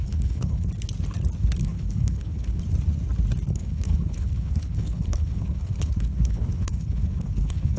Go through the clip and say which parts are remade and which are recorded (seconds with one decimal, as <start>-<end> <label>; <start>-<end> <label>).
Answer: 0.0-0.7 remade; 0.7-1.6 recorded; 1.6-2.6 remade; 2.6-3.5 recorded; 3.5-7.8 remade